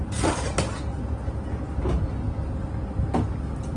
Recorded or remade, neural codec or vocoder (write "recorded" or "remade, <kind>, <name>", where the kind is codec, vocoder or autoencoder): recorded